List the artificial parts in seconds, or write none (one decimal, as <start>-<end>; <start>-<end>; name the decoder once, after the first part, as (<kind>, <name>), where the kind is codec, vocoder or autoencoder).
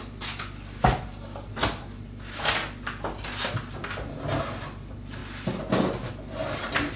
none